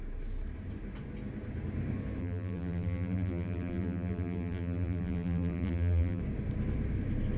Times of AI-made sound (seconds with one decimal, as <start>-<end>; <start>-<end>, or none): 2.2-6.2